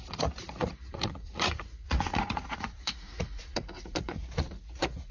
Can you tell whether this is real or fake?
fake